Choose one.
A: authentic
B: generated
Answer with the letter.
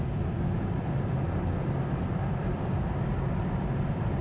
A